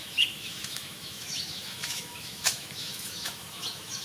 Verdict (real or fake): fake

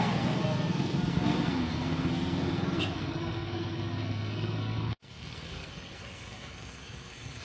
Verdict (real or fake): fake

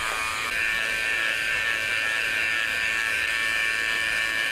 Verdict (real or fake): fake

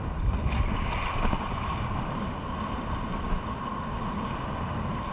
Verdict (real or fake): real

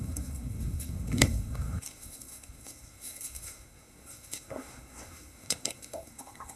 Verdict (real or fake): fake